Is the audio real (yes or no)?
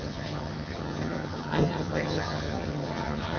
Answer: no